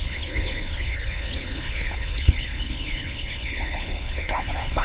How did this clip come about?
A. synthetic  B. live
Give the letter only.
A